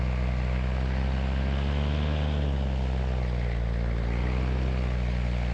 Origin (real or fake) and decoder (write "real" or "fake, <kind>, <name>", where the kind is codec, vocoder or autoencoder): real